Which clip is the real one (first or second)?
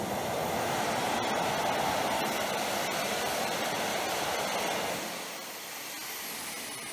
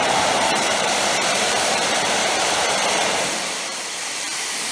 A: first